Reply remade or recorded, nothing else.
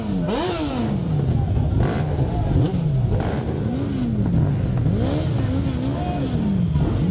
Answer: recorded